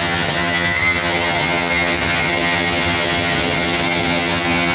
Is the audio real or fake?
fake